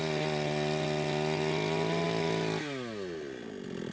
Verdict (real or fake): real